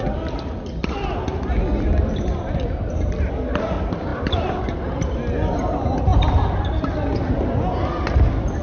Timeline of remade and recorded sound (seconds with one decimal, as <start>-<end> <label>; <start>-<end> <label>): 0.0-8.6 recorded